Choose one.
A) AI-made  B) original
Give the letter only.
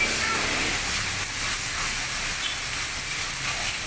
B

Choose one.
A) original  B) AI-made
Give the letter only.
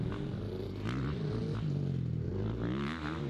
A